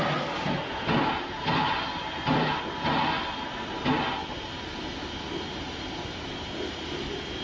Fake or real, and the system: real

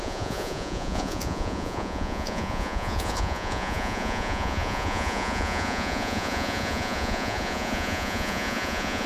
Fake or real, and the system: fake, vocoder, Vocos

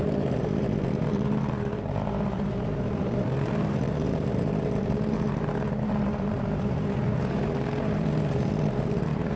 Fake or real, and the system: fake, vocoder, BigVGAN v2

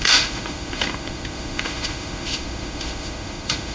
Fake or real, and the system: fake, autoencoder, DAC-VAE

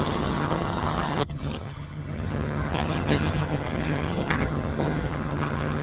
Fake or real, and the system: fake, vocoder, HiFi-GAN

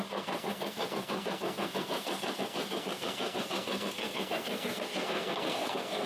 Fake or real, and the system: fake, codec, SNAC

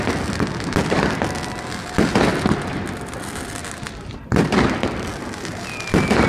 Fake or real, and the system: real